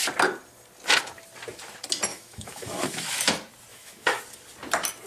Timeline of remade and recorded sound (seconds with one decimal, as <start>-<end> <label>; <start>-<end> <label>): 0.0-2.1 recorded; 2.1-3.2 remade; 3.2-3.7 recorded; 3.7-4.2 remade; 4.2-5.1 recorded